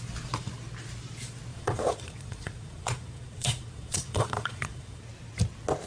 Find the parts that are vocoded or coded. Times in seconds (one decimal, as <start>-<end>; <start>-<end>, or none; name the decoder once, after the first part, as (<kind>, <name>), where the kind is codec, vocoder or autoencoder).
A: 1.5-5.0 (vocoder, Vocos)